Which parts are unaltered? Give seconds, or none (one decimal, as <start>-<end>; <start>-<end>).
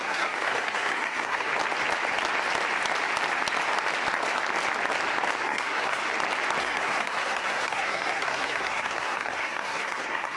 1.5-5.4; 6.0-6.6